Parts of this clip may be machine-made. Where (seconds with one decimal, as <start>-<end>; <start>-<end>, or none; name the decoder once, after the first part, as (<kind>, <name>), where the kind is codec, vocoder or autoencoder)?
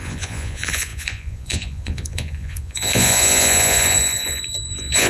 0.0-5.1 (vocoder, Vocos)